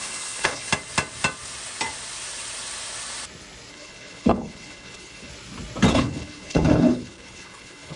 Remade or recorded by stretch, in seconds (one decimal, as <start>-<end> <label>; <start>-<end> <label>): 0.0-0.7 remade; 0.7-3.7 recorded; 3.7-5.3 remade; 5.3-5.9 recorded; 5.9-8.0 remade

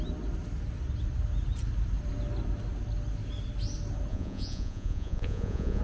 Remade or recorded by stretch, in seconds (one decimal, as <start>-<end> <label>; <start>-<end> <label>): 0.0-4.1 recorded; 4.1-5.8 remade

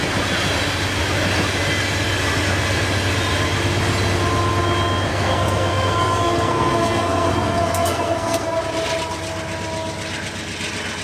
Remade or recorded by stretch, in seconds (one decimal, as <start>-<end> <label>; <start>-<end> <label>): 0.0-5.1 recorded; 5.1-8.6 remade; 8.6-11.0 recorded

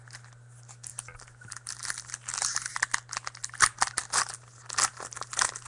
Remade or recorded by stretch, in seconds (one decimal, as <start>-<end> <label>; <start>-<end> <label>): 0.0-5.7 recorded

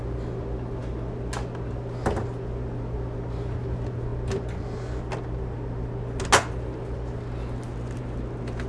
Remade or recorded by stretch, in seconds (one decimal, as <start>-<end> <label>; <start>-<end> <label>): 0.0-8.7 recorded

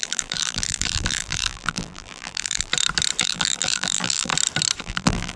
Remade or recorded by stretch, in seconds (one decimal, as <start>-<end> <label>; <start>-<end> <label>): 0.0-2.7 remade; 2.7-3.2 recorded; 3.2-4.3 remade; 4.3-4.8 recorded; 4.8-5.4 remade

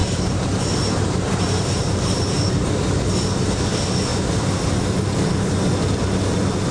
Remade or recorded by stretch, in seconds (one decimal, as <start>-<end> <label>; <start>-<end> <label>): 0.0-2.5 remade; 2.5-4.1 recorded; 4.1-5.3 remade; 5.3-6.7 recorded

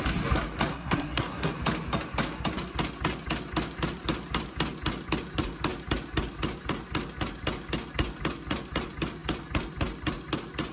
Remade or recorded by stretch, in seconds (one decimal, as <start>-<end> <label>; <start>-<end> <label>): 0.0-0.7 recorded; 0.7-1.5 remade; 1.5-10.7 recorded